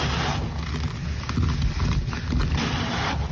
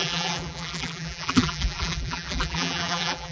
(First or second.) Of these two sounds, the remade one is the second